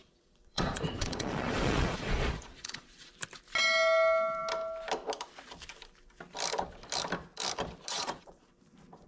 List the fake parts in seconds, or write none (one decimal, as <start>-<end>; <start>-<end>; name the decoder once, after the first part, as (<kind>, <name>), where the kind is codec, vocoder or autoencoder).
0.0-3.1 (vocoder, Vocos); 7.9-8.6